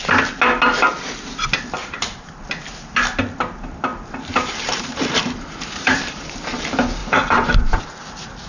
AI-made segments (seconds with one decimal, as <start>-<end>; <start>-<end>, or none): 1.8-2.3; 3.9-6.3; 7.0-7.8